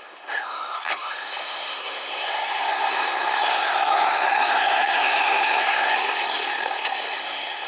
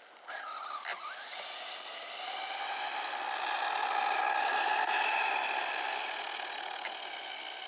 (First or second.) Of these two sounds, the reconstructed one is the first